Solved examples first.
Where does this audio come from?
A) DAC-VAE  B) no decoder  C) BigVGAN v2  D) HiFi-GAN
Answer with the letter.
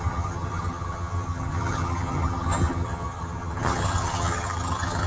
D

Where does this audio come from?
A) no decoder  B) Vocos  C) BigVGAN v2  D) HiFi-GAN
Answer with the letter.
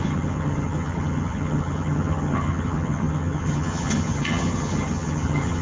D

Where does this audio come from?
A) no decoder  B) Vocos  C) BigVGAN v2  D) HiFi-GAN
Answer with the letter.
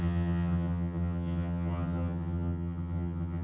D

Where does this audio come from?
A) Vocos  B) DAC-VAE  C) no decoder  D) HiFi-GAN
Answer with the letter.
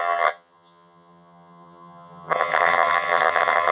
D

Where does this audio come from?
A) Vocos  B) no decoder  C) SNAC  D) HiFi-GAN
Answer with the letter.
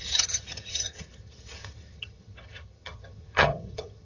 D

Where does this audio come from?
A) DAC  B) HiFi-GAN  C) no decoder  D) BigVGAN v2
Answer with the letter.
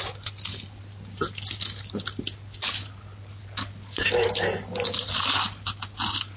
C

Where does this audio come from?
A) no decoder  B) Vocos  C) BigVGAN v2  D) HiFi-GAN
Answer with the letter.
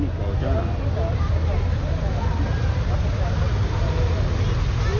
A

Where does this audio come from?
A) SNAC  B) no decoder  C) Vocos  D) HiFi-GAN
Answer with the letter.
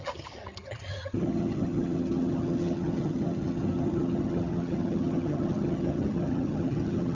D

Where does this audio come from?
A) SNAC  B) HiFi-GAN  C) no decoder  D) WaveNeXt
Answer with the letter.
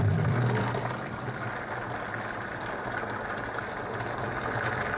C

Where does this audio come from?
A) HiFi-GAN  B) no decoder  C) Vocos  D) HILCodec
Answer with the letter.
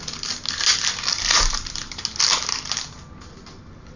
B